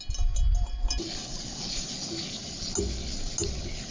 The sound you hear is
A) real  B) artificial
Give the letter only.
A